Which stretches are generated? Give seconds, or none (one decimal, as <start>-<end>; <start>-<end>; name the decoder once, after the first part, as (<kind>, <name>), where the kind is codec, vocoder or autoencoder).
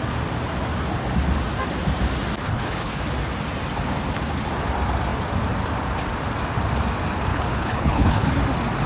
2.4-3.0 (codec, HILCodec); 7.3-8.3